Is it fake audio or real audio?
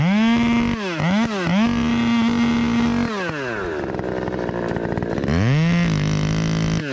real